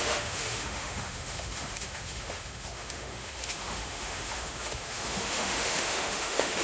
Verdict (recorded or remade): remade